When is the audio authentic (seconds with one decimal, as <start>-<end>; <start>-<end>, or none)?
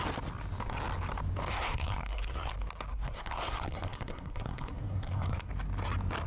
0.0-1.5; 2.5-2.9; 5.5-6.3